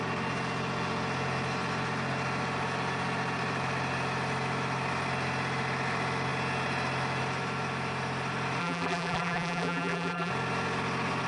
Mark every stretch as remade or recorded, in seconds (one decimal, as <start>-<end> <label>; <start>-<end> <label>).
0.0-8.6 recorded; 8.6-10.3 remade; 10.3-11.3 recorded